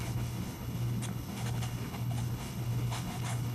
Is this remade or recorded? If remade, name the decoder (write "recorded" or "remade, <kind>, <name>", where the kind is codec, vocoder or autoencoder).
remade, codec, HILCodec